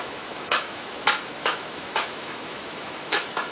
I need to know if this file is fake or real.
fake